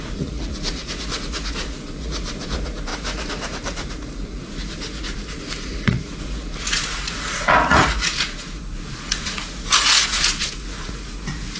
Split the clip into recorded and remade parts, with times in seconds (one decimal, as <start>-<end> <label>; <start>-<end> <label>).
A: 0.0-11.6 remade

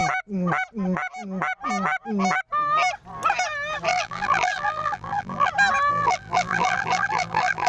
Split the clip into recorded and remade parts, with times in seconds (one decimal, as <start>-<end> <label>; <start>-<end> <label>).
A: 0.0-3.9 recorded; 3.9-5.5 remade; 5.5-5.9 recorded; 5.9-7.7 remade

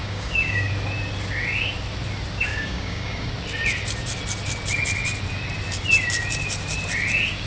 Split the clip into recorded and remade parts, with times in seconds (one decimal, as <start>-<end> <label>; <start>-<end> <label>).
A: 0.0-0.7 remade; 0.7-2.5 recorded; 2.5-3.3 remade; 3.3-7.5 recorded

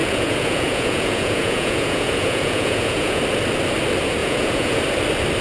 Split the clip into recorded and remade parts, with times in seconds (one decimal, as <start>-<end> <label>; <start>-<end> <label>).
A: 0.0-3.2 remade; 3.2-4.2 recorded; 4.2-4.8 remade; 4.8-5.4 recorded

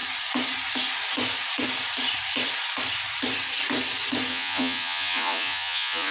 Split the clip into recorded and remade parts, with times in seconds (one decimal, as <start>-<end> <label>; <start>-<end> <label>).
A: 0.0-4.3 recorded; 4.3-6.1 remade